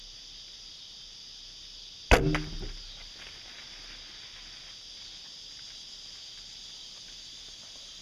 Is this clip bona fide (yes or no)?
yes